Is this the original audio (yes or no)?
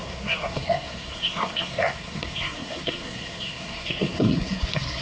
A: no